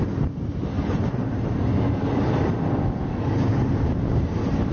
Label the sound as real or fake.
real